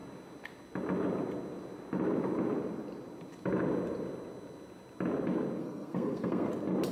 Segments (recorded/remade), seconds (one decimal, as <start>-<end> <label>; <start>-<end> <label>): 0.0-5.6 recorded; 5.6-6.5 remade; 6.5-6.9 recorded